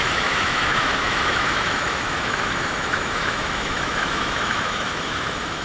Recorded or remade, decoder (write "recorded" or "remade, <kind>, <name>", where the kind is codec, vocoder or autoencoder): remade, autoencoder, DAC-VAE